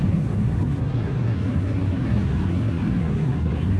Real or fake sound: fake